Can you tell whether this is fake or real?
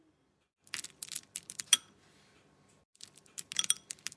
real